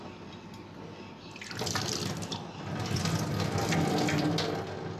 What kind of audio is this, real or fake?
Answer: real